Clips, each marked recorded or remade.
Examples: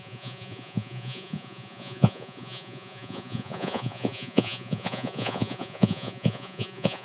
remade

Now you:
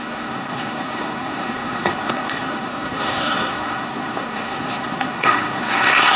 remade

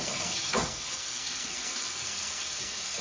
remade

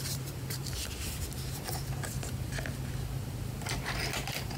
remade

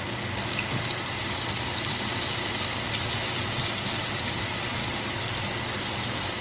recorded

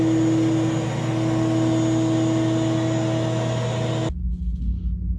recorded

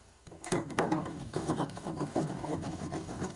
remade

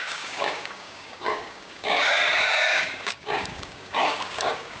remade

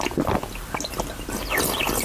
recorded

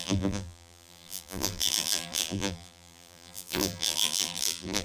remade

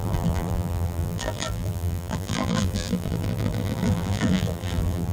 remade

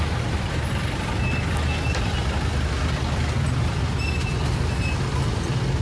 recorded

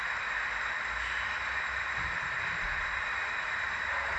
recorded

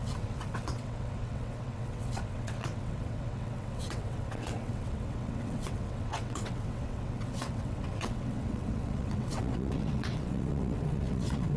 remade